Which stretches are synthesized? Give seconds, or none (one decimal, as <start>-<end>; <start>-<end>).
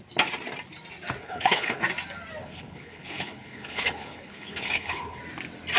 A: 1.2-1.8; 2.4-5.2